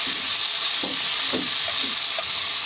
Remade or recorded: recorded